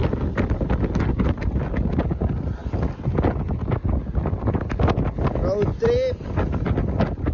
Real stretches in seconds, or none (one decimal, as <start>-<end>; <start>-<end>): 0.0-7.3